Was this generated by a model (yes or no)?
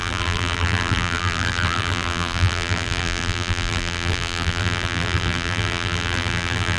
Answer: yes